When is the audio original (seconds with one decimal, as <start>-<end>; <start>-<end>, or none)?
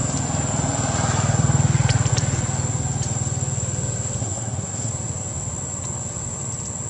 0.0-4.2; 4.9-6.9